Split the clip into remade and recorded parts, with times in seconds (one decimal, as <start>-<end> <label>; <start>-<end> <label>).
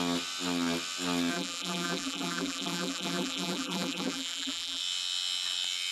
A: 0.0-1.3 recorded; 1.3-4.8 remade; 4.8-5.9 recorded